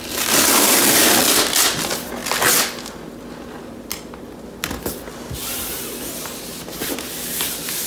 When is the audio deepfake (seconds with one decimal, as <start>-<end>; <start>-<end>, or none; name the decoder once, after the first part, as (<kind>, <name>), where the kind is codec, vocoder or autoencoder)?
none

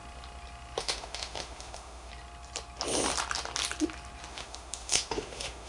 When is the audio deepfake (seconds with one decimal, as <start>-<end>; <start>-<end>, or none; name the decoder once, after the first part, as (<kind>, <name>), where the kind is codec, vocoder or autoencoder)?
0.8-2.1 (autoencoder, DAC-VAE); 4.3-5.7

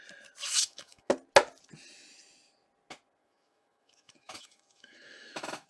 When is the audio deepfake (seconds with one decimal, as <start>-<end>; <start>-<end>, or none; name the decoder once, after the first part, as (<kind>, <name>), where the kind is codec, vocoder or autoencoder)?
0.4-1.1 (autoencoder, DAC-VAE); 3.2-5.7

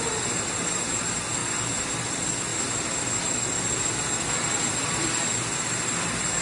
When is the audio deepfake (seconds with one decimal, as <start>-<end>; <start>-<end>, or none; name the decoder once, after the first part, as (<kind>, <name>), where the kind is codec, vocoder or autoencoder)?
none